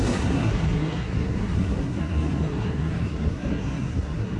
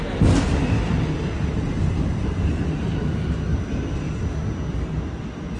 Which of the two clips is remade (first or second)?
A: first